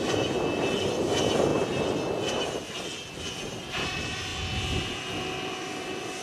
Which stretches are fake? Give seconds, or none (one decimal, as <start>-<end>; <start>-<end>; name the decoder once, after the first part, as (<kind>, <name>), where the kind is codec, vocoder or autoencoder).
none